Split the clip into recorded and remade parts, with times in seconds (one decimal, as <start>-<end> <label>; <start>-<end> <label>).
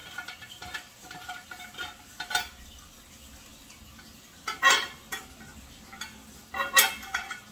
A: 0.0-7.5 recorded